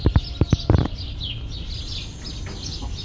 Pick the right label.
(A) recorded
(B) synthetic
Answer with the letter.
A